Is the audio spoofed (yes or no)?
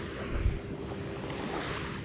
no